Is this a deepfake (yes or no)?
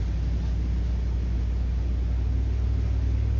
no